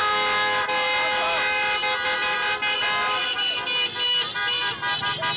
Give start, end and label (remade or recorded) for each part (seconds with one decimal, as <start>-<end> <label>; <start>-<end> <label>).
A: 0.0-5.4 recorded

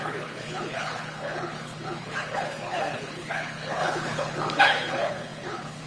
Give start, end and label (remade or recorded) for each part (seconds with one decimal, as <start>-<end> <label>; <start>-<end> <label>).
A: 0.0-5.9 remade

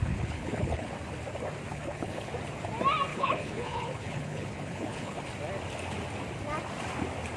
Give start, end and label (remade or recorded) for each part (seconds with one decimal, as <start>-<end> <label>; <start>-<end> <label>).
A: 0.0-0.9 remade; 0.9-1.7 recorded; 1.7-2.3 remade; 2.3-3.1 recorded; 3.1-5.2 remade; 5.2-7.4 recorded

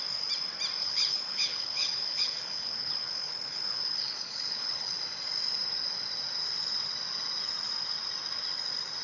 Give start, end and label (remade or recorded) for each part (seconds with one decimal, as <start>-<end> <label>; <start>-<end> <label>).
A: 0.0-0.8 recorded; 0.8-5.0 remade; 5.0-9.0 recorded

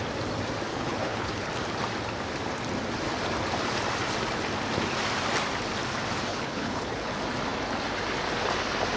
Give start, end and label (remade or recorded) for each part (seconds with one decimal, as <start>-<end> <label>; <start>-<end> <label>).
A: 0.0-0.7 recorded; 0.7-1.5 remade; 1.5-6.3 recorded; 6.3-7.1 remade; 7.1-9.0 recorded

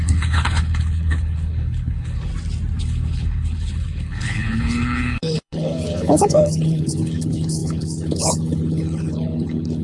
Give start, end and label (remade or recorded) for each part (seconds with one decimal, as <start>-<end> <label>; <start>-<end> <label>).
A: 0.0-2.3 remade; 2.3-2.8 recorded; 2.8-9.8 remade

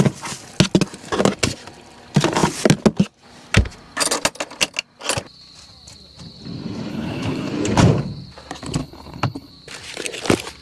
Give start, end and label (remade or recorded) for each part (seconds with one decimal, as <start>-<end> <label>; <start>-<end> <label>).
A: 0.0-6.9 recorded; 6.9-7.5 remade; 7.5-8.8 recorded; 8.8-9.5 remade; 9.5-10.6 recorded